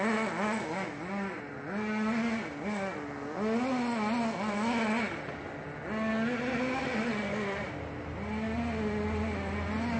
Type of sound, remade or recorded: recorded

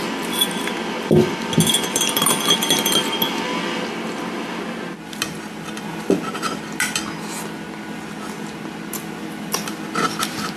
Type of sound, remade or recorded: recorded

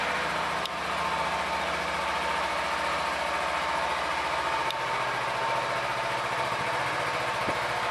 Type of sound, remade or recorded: recorded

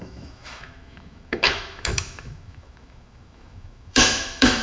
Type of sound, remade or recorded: remade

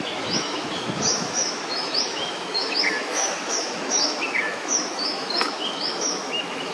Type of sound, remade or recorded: remade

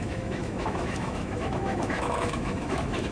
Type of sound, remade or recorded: remade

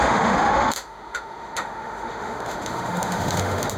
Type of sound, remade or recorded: remade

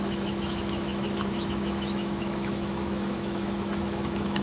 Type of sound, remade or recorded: remade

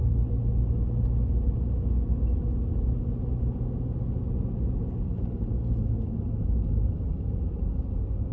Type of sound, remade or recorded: recorded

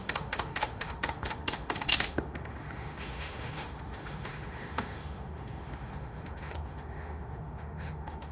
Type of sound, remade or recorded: remade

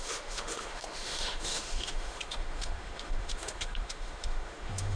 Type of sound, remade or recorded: remade